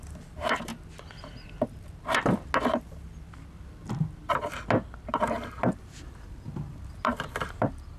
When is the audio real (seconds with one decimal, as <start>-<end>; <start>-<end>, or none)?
0.7-5.1

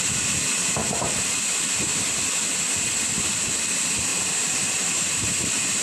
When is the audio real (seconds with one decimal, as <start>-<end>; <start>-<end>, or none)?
0.0-0.8; 1.5-4.1